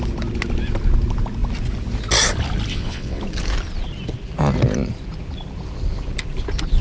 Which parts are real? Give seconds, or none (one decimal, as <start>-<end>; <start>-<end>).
0.0-2.7; 3.2-6.8

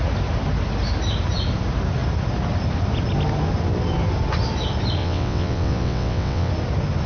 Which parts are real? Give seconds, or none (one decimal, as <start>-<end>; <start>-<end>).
0.0-5.0; 6.5-7.1

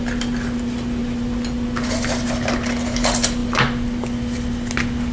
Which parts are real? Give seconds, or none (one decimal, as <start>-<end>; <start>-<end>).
0.0-5.1

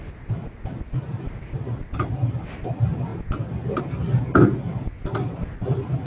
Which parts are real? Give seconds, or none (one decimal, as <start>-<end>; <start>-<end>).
0.0-6.1

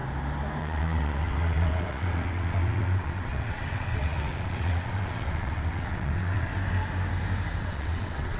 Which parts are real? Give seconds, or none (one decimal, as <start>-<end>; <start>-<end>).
0.0-0.6; 6.5-7.6